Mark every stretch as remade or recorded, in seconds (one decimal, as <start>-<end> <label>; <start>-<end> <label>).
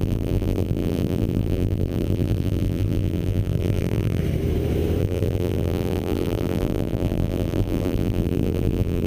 0.0-4.2 remade; 4.2-5.0 recorded; 5.0-9.1 remade